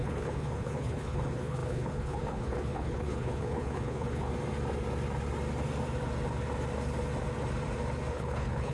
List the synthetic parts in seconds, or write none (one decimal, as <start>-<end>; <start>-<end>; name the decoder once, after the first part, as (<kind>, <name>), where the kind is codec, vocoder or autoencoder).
0.0-4.3 (codec, HILCodec); 8.1-8.7

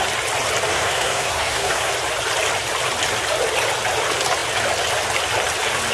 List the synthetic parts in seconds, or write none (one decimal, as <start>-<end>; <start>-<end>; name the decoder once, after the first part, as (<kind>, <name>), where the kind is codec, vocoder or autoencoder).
0.7-1.9 (codec, SNAC)

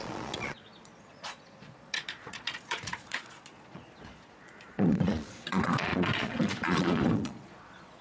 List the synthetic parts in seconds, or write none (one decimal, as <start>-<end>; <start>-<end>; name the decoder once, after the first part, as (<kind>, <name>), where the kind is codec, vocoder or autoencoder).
0.0-8.0 (vocoder, Vocos)

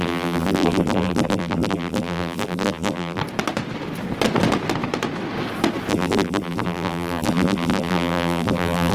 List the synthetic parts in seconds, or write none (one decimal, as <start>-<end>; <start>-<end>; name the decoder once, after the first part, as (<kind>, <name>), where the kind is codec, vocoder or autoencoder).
0.0-3.2 (vocoder, BigVGAN v2); 5.9-8.9

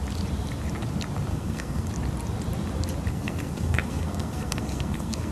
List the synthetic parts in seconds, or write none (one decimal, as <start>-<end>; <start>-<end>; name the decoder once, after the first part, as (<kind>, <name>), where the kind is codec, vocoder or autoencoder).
1.3-1.9 (codec, SNAC); 3.1-5.3

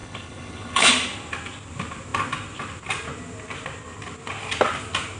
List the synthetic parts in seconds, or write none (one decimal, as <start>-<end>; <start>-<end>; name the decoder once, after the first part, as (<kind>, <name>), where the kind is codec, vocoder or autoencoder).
0.0-0.9 (codec, HILCodec)